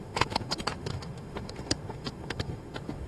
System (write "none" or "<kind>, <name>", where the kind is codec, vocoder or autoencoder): autoencoder, DAC-VAE